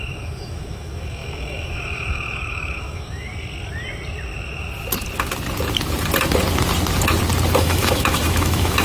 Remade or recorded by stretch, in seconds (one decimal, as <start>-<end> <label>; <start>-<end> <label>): 0.0-3.3 remade; 3.3-7.6 recorded; 7.6-8.8 remade